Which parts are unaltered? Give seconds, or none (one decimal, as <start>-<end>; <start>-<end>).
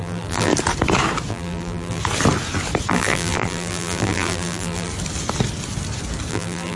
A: 0.5-1.3; 2.0-2.9; 4.9-6.3